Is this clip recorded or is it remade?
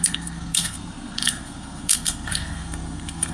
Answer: remade